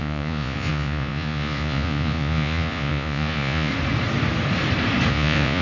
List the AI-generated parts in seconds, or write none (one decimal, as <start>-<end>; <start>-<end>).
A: 0.0-3.7; 5.1-5.6